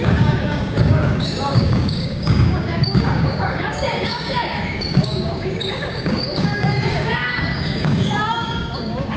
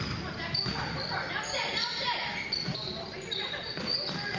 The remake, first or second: first